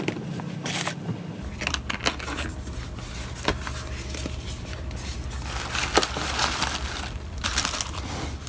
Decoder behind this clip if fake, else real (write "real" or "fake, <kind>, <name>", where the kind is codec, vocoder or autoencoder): real